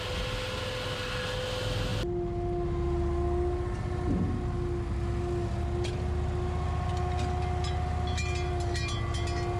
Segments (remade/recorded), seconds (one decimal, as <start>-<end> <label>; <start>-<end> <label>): 0.0-9.6 recorded